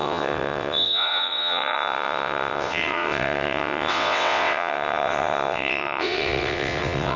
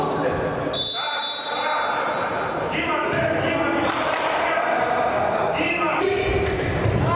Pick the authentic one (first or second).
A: second